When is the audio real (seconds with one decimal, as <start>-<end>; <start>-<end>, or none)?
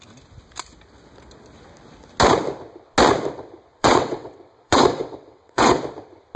0.0-3.7; 5.8-6.4